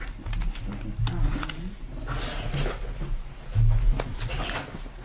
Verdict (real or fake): real